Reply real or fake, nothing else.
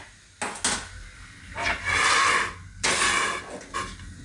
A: real